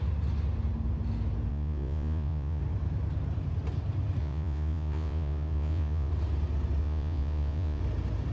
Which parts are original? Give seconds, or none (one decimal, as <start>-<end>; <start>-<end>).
0.0-1.5; 2.6-4.2; 6.1-6.8; 7.8-8.3